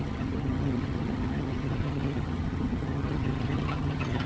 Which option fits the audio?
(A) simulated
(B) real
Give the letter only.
A